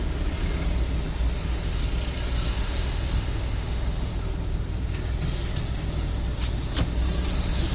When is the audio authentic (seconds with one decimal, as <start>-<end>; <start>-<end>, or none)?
0.0-1.4; 1.8-2.5; 4.1-7.3